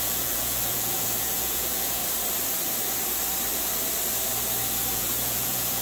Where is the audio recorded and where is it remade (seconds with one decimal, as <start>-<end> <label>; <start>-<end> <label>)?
0.0-2.0 remade; 2.0-4.9 recorded; 4.9-5.8 remade